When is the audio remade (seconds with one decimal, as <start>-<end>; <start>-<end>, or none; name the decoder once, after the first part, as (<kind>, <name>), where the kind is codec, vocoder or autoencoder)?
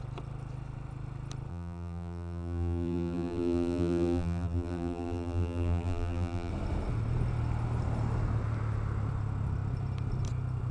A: 1.5-6.5 (vocoder, BigVGAN v2)